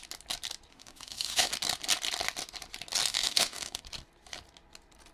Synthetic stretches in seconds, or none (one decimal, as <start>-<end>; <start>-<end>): 0.7-1.5; 3.1-3.8